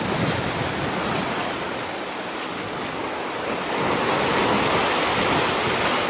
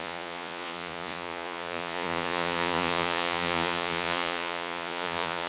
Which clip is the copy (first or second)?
second